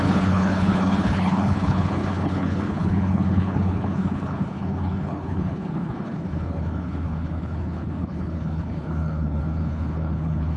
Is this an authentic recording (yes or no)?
no